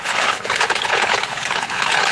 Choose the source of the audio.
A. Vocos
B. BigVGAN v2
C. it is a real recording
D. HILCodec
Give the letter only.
D